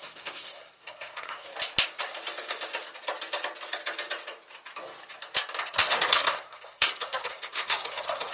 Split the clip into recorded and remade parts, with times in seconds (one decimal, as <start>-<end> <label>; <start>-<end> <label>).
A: 0.0-1.5 remade; 1.5-5.6 recorded; 5.6-8.3 remade